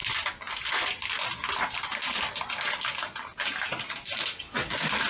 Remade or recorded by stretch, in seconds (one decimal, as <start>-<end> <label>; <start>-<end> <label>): 0.0-5.1 recorded